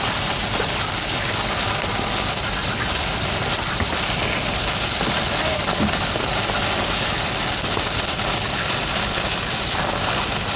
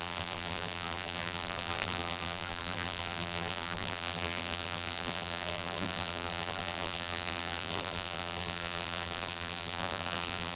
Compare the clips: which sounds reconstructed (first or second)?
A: second